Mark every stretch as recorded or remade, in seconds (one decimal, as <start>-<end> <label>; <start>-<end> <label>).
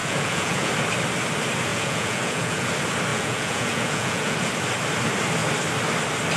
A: 0.0-0.7 remade; 0.7-1.7 recorded; 1.7-2.7 remade; 2.7-3.1 recorded; 3.1-4.5 remade; 4.5-6.4 recorded